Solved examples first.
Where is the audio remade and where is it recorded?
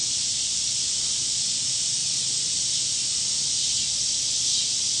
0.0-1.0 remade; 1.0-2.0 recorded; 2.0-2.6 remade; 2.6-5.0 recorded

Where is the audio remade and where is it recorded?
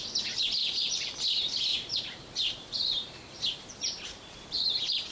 0.0-0.6 recorded; 0.6-1.2 remade; 1.2-1.7 recorded; 1.7-5.1 remade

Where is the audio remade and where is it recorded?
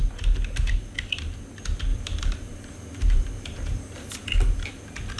0.0-1.9 recorded; 1.9-4.1 remade; 4.1-5.2 recorded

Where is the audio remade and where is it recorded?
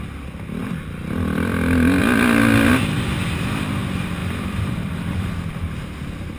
0.0-0.6 recorded; 0.6-2.0 remade; 2.0-4.2 recorded; 4.2-5.3 remade; 5.3-6.4 recorded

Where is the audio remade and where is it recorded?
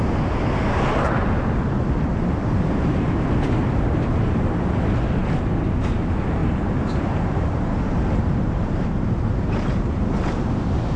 0.0-2.4 recorded; 2.4-4.0 remade; 4.0-6.4 recorded; 6.4-10.1 remade; 10.1-11.0 recorded